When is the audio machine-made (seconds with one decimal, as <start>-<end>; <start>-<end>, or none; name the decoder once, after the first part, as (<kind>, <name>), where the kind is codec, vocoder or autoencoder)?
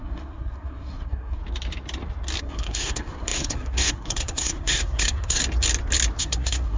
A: 0.0-1.4 (codec, SNAC); 2.4-5.4; 6.2-6.8